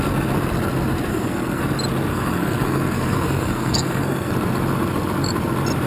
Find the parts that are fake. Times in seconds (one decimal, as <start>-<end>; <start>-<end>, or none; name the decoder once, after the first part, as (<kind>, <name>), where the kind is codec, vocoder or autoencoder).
1.1-1.6 (codec, SNAC); 2.1-4.3